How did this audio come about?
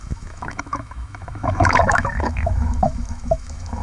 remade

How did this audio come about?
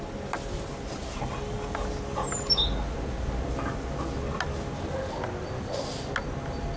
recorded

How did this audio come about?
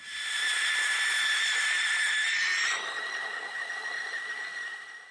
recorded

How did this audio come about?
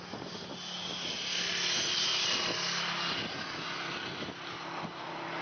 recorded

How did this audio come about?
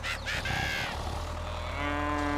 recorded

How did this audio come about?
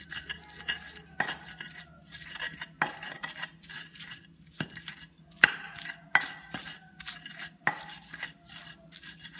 recorded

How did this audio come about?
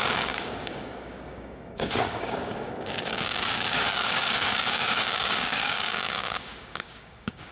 remade